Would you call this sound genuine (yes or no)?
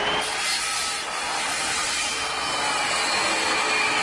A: yes